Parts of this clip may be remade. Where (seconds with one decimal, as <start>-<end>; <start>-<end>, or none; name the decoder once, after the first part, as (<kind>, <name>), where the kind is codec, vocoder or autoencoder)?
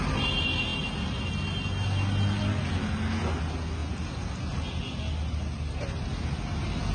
none